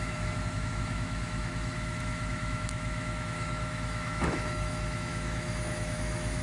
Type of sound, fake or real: fake